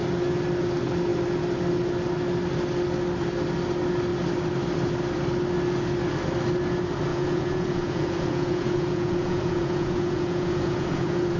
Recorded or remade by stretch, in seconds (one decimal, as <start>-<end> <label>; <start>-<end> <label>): 0.0-7.1 recorded; 7.1-11.4 remade